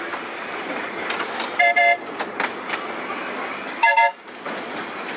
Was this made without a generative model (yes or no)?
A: yes